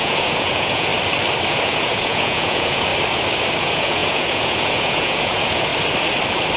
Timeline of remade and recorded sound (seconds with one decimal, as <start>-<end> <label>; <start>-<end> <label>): 0.0-0.9 remade; 0.9-1.5 recorded; 1.5-2.9 remade; 2.9-3.6 recorded; 3.6-5.7 remade; 5.7-6.6 recorded